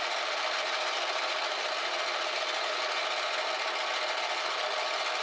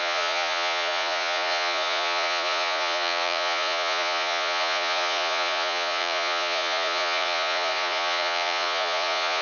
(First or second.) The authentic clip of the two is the first